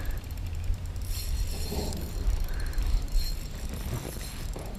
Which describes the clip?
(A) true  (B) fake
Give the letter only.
B